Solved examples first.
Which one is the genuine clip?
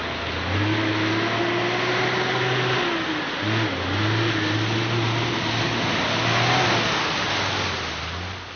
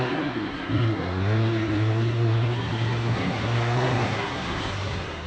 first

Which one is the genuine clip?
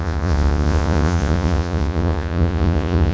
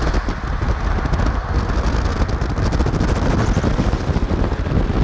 second